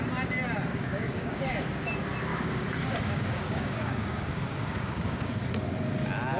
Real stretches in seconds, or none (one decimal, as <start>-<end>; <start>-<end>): 0.0-0.7; 1.6-2.3; 5.5-6.4